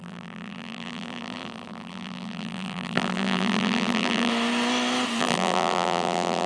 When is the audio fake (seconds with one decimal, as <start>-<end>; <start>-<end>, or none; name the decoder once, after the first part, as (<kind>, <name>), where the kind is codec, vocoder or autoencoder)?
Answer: 0.0-4.3 (vocoder, BigVGAN v2); 5.2-6.5